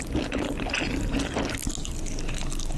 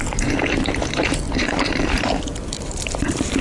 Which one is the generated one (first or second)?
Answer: second